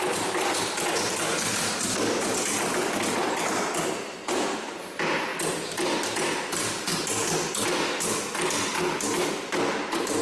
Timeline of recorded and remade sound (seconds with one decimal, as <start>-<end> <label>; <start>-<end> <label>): 0.0-10.2 recorded